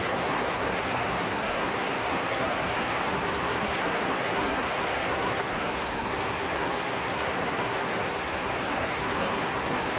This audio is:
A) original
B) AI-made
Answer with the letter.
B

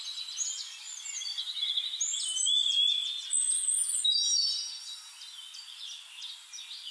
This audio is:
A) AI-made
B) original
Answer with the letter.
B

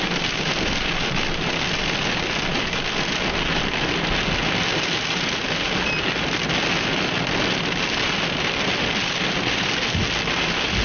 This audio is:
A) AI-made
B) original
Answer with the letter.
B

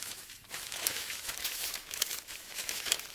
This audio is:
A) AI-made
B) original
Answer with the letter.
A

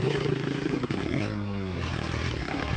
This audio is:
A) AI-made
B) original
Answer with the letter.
A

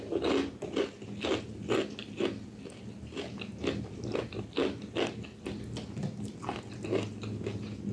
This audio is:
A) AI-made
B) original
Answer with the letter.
B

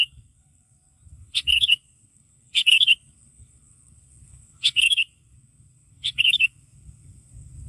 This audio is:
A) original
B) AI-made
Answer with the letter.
B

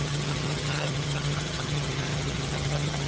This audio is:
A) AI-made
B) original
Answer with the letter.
A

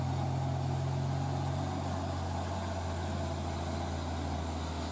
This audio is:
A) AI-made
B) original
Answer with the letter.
B